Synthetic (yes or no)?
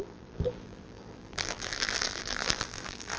yes